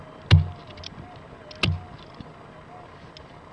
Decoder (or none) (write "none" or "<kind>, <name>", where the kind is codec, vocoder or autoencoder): none